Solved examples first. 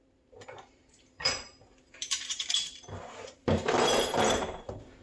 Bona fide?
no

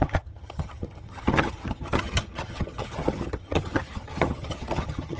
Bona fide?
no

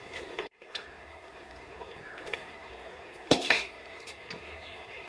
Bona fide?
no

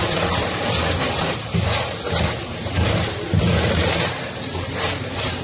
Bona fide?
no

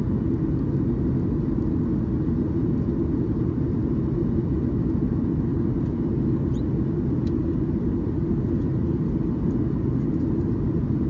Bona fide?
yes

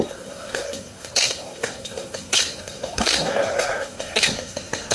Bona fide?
no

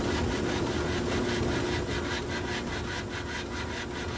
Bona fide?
yes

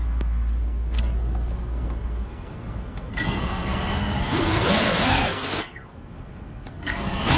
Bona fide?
no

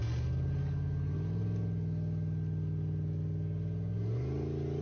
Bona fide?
yes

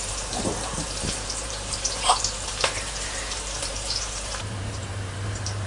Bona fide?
no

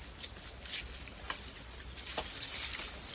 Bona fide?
yes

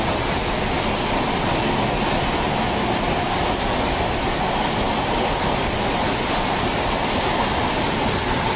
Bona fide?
yes